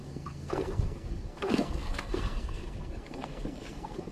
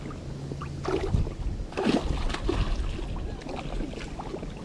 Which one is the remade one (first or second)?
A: first